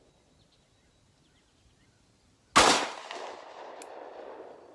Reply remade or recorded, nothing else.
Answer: recorded